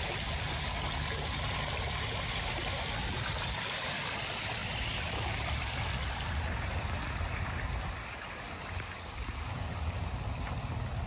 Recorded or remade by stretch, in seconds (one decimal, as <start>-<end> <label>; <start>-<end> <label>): 0.0-4.6 recorded; 4.6-6.4 remade; 6.4-11.1 recorded